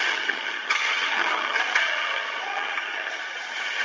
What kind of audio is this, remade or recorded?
remade